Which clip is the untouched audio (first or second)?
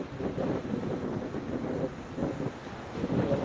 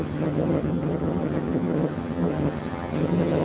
first